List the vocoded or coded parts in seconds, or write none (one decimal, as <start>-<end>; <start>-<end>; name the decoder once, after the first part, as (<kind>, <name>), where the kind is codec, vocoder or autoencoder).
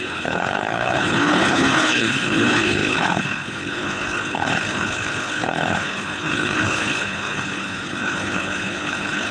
0.0-9.3 (codec, HILCodec)